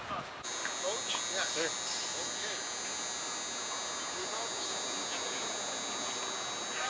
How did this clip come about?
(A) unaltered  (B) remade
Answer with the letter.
A